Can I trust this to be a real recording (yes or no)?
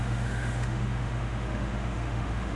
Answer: no